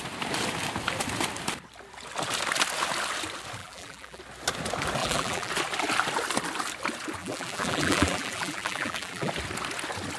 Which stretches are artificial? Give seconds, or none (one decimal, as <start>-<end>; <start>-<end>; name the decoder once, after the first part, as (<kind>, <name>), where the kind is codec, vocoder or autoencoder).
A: 3.6-4.2 (vocoder, BigVGAN v2); 5.0-5.5; 7.2-9.3